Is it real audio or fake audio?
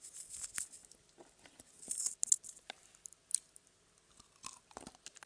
real